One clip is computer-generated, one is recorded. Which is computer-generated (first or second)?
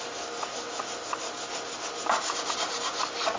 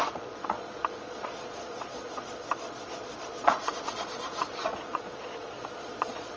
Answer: second